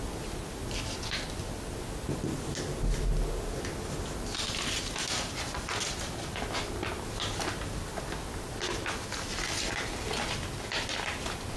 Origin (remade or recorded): recorded